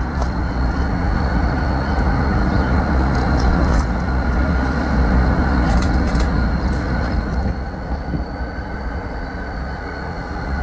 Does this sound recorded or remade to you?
remade